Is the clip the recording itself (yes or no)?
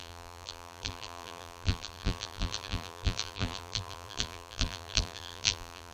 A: no